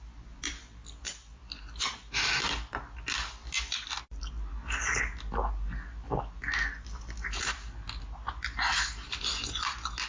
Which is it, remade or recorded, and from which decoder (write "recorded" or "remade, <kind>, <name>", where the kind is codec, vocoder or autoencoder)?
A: recorded